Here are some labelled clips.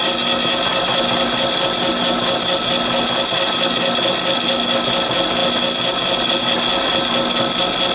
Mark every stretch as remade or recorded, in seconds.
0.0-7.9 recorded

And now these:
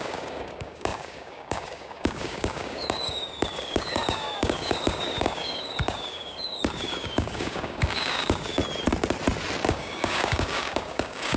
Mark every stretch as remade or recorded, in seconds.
0.0-8.6 remade; 8.6-9.7 recorded; 9.7-11.4 remade

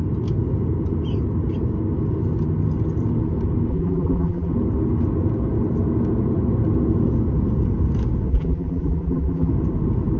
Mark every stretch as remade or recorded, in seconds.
0.0-3.7 recorded; 3.7-4.5 remade; 4.5-8.3 recorded; 8.3-9.5 remade; 9.5-10.2 recorded

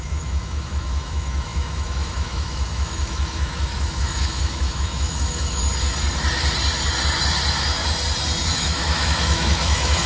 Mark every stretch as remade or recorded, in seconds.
0.0-5.6 remade; 5.6-8.5 recorded; 8.5-10.1 remade

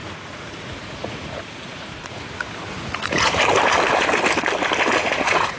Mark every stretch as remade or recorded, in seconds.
0.0-3.4 remade; 3.4-5.0 recorded; 5.0-5.6 remade

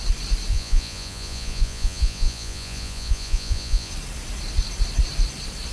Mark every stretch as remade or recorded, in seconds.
0.0-0.5 recorded; 0.5-3.9 remade; 3.9-5.7 recorded

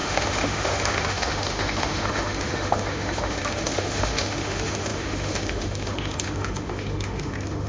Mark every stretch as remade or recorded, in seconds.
0.0-7.7 remade